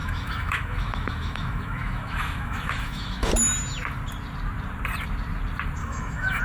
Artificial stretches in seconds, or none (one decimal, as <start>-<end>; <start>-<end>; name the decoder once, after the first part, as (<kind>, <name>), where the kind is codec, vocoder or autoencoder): 0.0-3.3 (autoencoder, DAC-VAE); 5.8-6.4